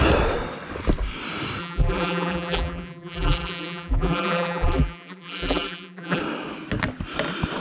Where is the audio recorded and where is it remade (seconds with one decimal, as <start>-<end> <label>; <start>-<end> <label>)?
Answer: 0.0-1.6 recorded; 1.6-6.2 remade; 6.2-7.6 recorded